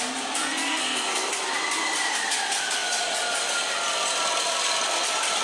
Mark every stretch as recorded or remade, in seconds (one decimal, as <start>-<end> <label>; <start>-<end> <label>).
0.0-0.4 recorded; 0.4-1.3 remade; 1.3-5.4 recorded